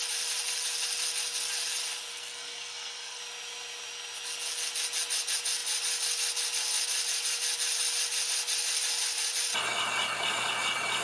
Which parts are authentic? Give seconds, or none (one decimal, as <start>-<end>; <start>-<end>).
0.0-2.1; 3.2-11.0